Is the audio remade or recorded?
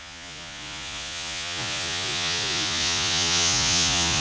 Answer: remade